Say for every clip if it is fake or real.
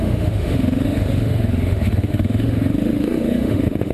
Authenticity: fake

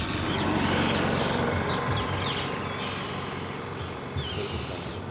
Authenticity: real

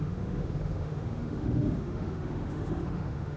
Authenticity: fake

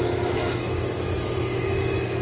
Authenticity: fake